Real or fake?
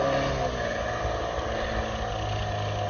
real